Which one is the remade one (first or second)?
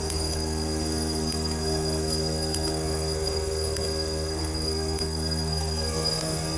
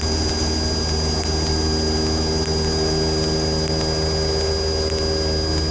first